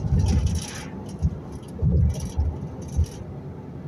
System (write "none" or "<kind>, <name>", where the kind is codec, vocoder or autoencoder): none